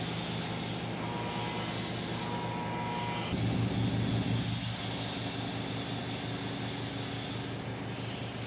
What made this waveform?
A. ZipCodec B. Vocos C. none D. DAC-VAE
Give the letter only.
C